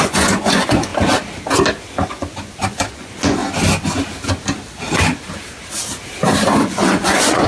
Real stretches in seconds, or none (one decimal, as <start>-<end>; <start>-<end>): 0.9-2.1; 3.4-6.5